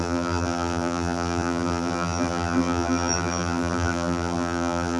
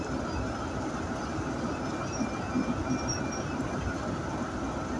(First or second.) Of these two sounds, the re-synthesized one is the first